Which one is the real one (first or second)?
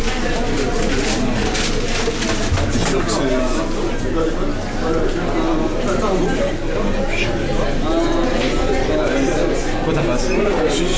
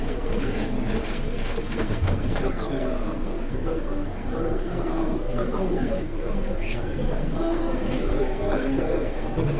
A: first